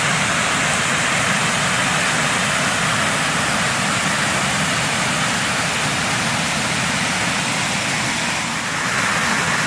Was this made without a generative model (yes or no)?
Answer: yes